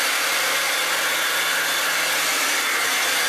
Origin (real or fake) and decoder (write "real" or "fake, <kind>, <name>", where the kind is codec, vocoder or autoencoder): real